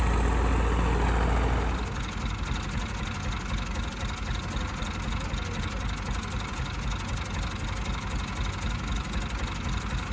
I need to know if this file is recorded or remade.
recorded